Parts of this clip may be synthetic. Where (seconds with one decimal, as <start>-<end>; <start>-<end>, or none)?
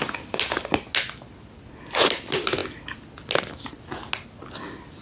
none